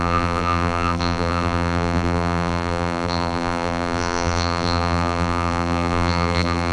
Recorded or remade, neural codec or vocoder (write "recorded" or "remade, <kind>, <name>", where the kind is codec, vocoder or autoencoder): remade, vocoder, BigVGAN v2